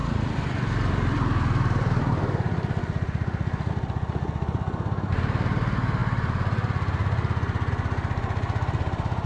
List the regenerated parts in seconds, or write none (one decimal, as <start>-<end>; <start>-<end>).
0.0-3.7